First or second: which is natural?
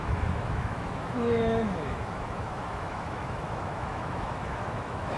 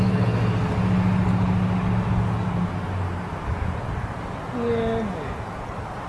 second